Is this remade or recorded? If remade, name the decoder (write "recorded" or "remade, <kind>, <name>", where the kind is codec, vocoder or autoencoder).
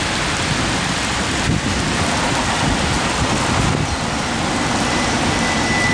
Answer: recorded